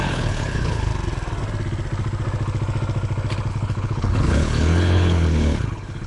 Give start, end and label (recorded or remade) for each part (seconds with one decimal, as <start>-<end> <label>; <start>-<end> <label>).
0.0-0.9 remade; 0.9-3.5 recorded; 3.5-6.1 remade